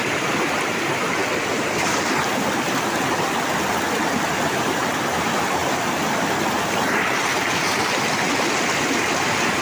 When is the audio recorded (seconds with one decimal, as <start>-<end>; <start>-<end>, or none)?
0.0-9.6